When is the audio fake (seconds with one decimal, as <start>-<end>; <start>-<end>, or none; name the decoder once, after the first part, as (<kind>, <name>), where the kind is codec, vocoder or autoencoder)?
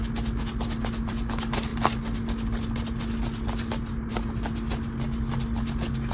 none